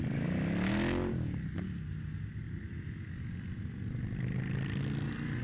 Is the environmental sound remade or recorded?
recorded